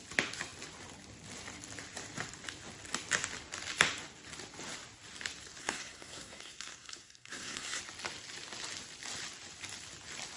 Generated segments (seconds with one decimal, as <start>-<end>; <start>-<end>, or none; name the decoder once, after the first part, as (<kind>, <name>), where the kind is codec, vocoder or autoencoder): 5.6-7.8 (codec, SNAC)

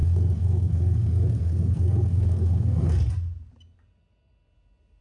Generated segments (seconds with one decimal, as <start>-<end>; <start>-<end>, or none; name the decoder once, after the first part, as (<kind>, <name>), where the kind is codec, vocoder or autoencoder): 0.0-3.0 (codec, SNAC)

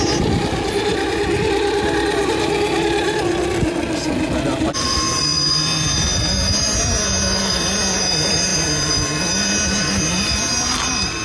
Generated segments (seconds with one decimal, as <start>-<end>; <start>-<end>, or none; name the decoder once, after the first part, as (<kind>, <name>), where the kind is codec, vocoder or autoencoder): none